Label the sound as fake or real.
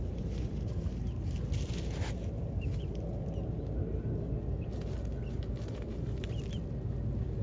real